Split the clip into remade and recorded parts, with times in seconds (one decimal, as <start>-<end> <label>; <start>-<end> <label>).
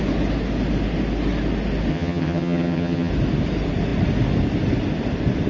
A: 0.0-1.9 recorded; 1.9-3.1 remade; 3.1-5.5 recorded